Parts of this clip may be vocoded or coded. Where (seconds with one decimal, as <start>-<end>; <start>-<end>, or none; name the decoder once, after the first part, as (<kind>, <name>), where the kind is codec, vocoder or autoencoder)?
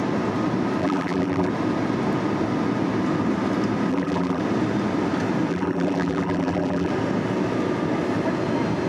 0.8-1.5 (vocoder, BigVGAN v2); 3.9-4.4; 5.5-6.9